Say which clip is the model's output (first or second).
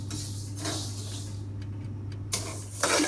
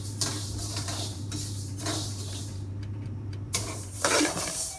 second